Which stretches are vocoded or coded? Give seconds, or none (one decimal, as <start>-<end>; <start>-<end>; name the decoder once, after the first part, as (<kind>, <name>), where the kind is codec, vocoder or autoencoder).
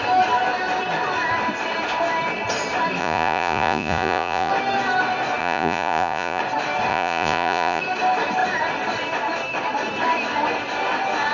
3.0-4.5 (vocoder, Vocos); 5.4-6.4; 6.9-7.8